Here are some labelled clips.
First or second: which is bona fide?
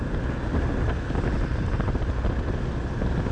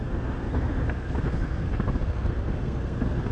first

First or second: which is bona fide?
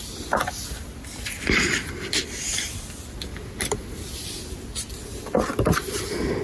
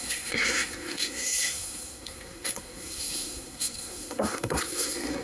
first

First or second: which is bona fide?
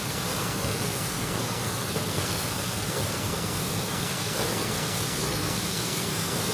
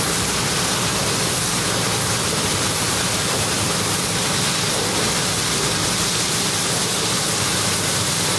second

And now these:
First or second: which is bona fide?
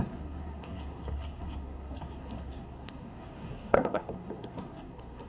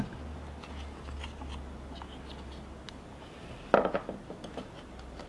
second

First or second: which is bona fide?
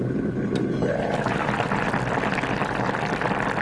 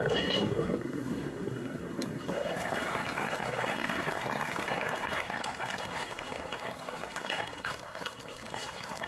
first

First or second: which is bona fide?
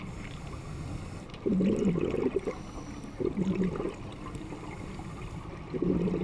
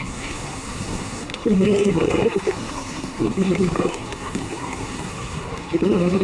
first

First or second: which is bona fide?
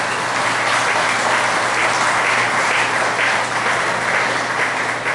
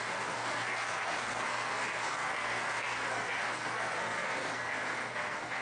first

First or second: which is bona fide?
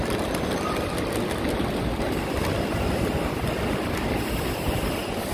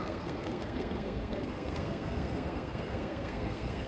first